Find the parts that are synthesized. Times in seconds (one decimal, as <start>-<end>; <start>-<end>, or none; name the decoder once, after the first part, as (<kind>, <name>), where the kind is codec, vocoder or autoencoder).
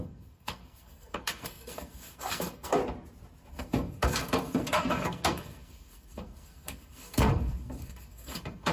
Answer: 0.0-2.8 (codec, SNAC); 3.5-8.7